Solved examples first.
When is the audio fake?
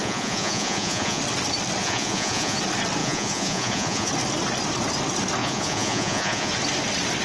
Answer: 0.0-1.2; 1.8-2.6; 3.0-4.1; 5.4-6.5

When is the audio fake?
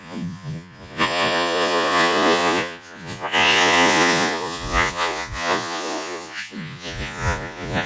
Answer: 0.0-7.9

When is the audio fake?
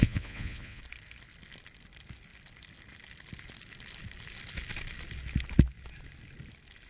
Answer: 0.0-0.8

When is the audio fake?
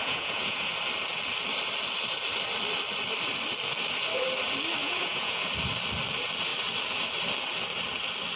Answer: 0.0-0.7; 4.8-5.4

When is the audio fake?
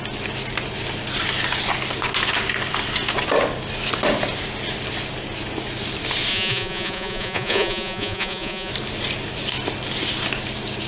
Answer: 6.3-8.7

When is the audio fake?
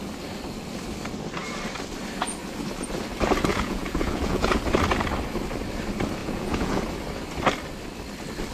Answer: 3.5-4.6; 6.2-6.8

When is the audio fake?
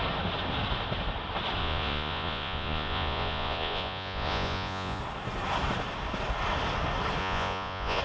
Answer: 1.6-5.0; 7.2-8.0